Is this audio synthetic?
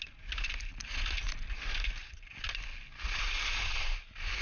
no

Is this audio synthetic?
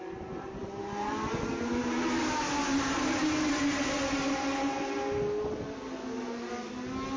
no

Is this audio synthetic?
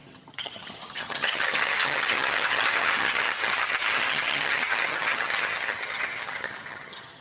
yes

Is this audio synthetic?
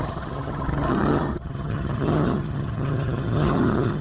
yes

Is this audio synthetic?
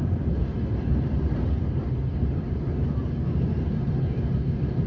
no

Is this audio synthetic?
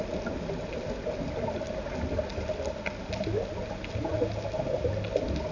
no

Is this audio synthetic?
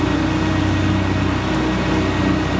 no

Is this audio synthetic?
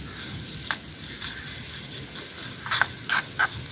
no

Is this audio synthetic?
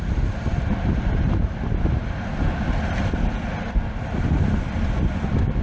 no